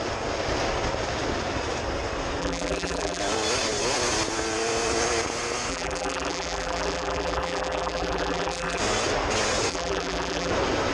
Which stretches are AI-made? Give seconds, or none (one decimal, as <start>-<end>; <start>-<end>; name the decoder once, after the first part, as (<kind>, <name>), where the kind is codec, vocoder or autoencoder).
2.4-3.2 (vocoder, BigVGAN v2); 5.7-8.8; 9.7-10.5